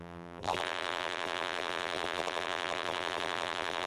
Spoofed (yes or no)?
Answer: yes